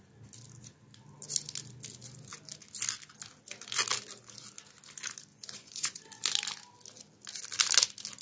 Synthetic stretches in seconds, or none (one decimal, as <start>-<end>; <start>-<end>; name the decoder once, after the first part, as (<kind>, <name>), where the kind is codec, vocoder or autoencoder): 5.3-6.0 (vocoder, Vocos)